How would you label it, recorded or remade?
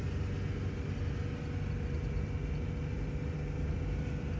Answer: recorded